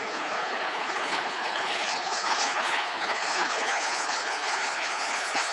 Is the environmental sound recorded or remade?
remade